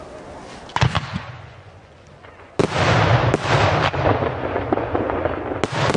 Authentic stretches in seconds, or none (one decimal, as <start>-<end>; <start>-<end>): 0.0-0.7; 2.6-4.1; 5.3-6.0